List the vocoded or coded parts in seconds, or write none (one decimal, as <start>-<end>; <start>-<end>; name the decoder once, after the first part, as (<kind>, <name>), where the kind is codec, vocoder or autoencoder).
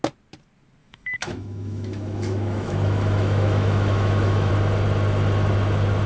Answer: 0.8-4.5 (autoencoder, DAC-VAE)